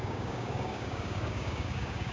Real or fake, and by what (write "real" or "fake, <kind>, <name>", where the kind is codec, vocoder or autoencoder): fake, codec, DAC